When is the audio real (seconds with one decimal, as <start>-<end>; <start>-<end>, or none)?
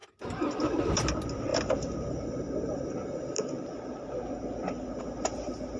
0.0-5.8